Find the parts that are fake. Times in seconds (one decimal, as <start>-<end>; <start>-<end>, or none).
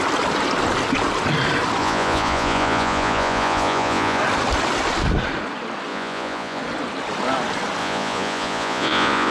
1.8-4.2; 5.9-6.6; 7.8-9.3